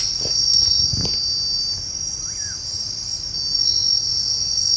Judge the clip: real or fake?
real